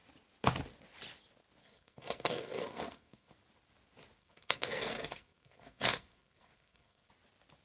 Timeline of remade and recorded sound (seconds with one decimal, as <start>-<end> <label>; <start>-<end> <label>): 0.0-1.6 recorded; 1.6-3.3 remade; 3.3-4.2 recorded; 4.2-7.1 remade; 7.1-7.6 recorded